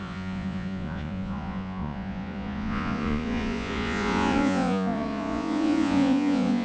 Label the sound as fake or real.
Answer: fake